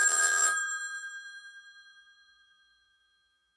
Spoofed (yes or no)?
yes